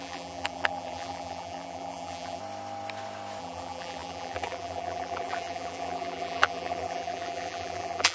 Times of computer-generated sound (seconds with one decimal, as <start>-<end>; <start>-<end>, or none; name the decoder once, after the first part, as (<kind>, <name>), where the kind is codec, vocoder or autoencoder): 0.0-2.4 (vocoder, BigVGAN v2); 3.4-8.1